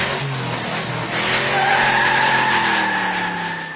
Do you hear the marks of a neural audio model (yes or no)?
no